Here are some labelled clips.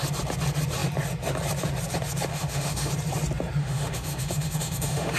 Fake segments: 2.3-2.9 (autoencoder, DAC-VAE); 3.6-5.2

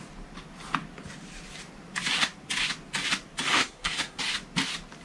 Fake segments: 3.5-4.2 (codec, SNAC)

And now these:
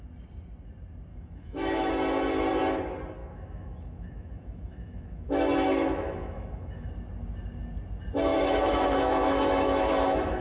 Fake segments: 1.1-1.9 (autoencoder, DAC-VAE); 3.2-6.9; 8.3-10.4

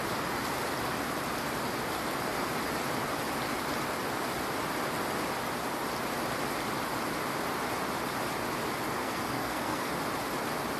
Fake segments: 9.0-9.9 (codec, SNAC)

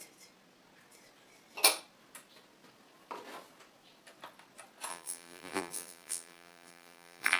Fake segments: 4.9-7.4 (vocoder, BigVGAN v2)